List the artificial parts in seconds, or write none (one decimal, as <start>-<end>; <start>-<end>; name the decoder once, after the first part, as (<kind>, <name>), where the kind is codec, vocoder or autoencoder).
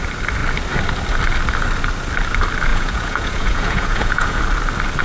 2.7-4.4 (vocoder, Vocos)